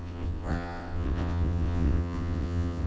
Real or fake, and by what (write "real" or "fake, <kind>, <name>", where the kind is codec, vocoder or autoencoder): fake, vocoder, WaveNeXt